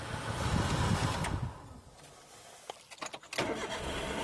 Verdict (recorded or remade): recorded